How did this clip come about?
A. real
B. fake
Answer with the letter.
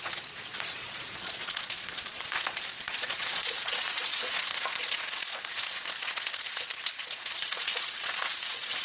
B